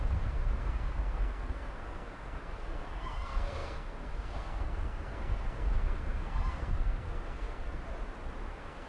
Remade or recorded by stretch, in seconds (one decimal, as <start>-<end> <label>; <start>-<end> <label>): 0.0-7.8 remade; 7.8-8.5 recorded; 8.5-8.9 remade